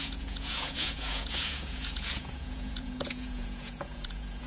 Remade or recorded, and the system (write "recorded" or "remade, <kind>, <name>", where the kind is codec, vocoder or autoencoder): remade, vocoder, Vocos